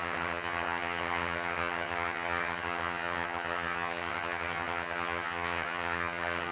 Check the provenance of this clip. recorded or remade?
remade